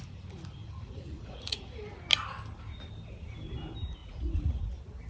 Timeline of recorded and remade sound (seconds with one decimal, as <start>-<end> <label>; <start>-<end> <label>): 0.0-0.6 recorded; 0.6-1.8 remade; 1.8-4.0 recorded; 4.0-4.6 remade; 4.6-5.1 recorded